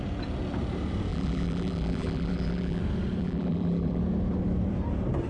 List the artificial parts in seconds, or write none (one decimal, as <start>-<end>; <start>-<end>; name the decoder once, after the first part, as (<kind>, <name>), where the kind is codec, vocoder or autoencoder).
1.1-2.8 (vocoder, BigVGAN v2); 3.2-4.0